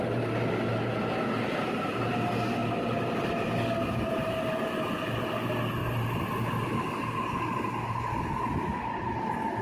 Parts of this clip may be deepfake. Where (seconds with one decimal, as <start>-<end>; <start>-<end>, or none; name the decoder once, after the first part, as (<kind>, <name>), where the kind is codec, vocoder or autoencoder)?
none